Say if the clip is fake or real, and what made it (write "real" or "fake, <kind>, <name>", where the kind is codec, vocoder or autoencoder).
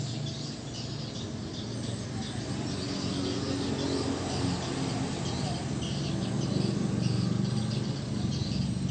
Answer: real